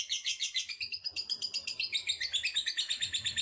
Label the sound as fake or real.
real